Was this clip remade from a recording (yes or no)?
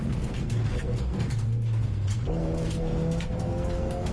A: yes